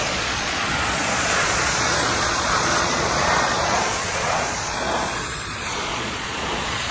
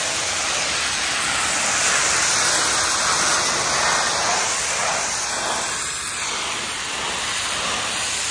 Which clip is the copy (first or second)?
first